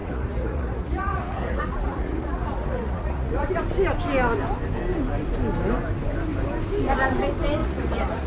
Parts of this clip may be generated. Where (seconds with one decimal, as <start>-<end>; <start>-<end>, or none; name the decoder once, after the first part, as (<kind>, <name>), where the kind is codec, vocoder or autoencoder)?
0.0-3.5 (vocoder, Vocos); 7.6-8.3